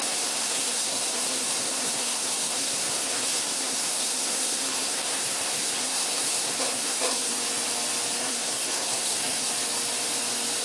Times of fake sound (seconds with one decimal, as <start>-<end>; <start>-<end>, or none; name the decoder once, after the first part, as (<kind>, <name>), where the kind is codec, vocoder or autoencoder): 0.0-7.3 (codec, SNAC); 8.2-9.5